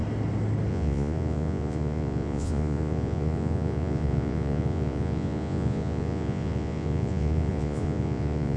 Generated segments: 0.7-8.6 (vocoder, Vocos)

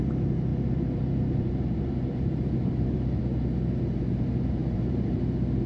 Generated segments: 0.5-2.5 (vocoder, BigVGAN v2); 4.6-5.2

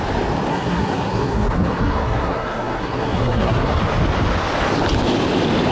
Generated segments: 0.5-3.8 (codec, SNAC)